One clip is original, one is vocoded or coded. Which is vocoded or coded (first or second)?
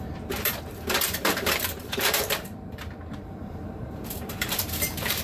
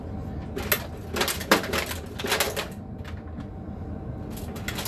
first